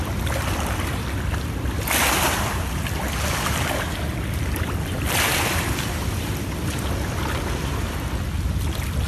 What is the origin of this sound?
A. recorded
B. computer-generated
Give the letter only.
A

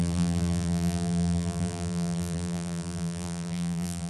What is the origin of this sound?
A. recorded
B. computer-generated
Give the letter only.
B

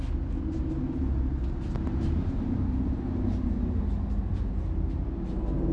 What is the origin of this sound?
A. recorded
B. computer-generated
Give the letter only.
A